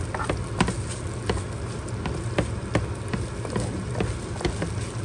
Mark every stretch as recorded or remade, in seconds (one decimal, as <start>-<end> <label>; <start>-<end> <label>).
0.0-5.0 recorded